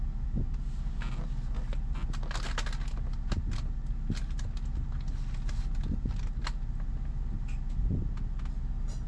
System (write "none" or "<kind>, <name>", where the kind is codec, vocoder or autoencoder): none